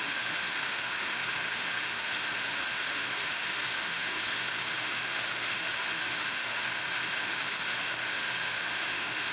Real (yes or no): no